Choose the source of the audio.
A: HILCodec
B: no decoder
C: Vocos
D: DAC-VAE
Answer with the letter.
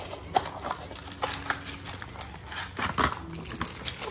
B